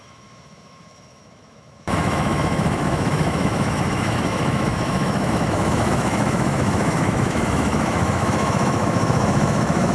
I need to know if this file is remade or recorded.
remade